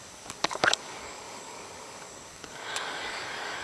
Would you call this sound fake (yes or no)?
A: yes